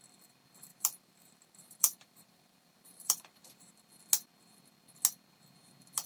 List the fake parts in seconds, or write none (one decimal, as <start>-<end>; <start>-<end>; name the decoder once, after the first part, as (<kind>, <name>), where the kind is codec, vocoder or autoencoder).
0.7-3.7 (vocoder, BigVGAN v2)